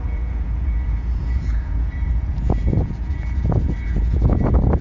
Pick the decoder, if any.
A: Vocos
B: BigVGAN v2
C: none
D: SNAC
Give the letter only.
A